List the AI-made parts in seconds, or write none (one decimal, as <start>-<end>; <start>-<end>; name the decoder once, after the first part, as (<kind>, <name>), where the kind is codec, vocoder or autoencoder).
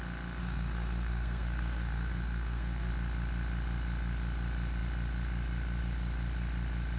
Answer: 0.4-2.9 (codec, SNAC)